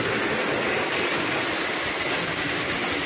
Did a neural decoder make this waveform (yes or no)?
no